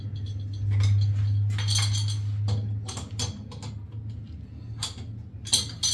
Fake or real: real